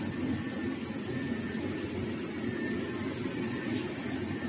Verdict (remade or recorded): recorded